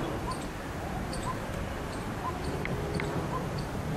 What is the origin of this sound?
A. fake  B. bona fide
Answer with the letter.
A